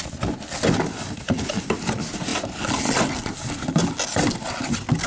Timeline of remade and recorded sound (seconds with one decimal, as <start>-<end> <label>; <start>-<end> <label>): 0.0-5.1 recorded